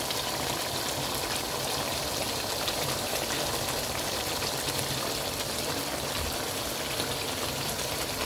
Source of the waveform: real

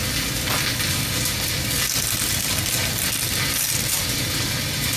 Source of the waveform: real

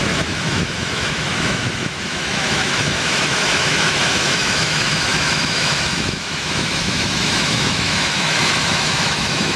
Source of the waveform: fake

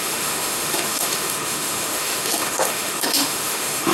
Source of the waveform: fake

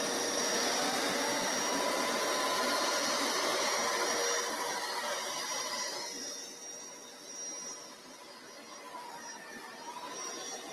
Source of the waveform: real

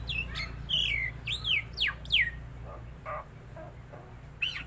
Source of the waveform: real